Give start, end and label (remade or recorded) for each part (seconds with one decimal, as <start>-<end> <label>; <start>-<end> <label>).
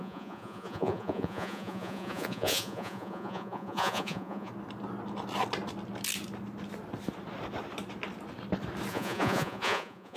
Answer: 0.0-4.5 remade; 4.5-8.9 recorded; 8.9-10.2 remade